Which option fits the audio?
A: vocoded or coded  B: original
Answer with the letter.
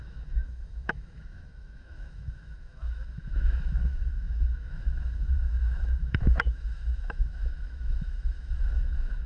A